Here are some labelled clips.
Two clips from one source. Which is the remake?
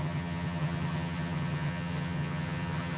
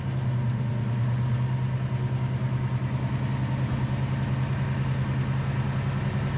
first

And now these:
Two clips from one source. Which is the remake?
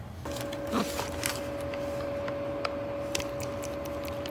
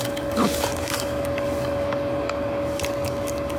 second